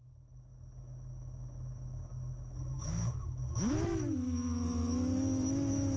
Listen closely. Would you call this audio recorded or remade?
remade